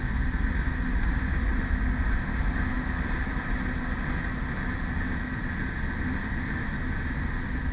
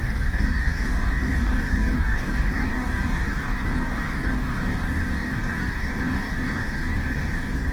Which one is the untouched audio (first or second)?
first